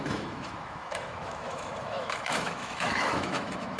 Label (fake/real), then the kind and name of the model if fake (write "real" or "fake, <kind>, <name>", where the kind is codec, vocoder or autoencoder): fake, autoencoder, DAC-VAE